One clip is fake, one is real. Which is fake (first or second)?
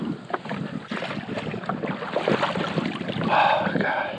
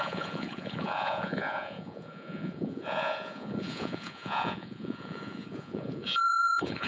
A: second